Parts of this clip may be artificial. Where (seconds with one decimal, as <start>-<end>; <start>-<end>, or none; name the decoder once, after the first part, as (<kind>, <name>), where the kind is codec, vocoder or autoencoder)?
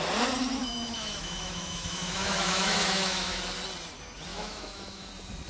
0.6-3.4 (autoencoder, DAC-VAE); 4.3-5.1